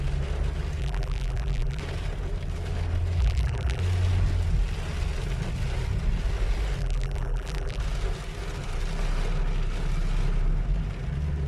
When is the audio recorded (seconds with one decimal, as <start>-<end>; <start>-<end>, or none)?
0.0-0.8; 1.8-3.2; 3.8-6.8; 7.8-11.5

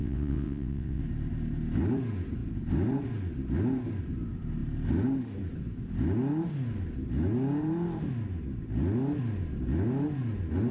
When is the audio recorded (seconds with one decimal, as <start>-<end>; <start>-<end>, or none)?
1.0-10.7

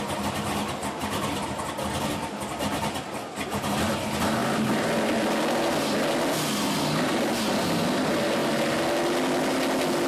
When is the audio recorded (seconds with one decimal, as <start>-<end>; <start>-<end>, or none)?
0.0-10.1